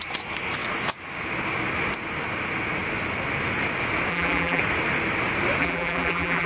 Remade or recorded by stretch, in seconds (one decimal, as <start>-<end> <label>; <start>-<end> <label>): 0.0-4.1 recorded; 4.1-4.6 remade; 4.6-5.6 recorded; 5.6-6.5 remade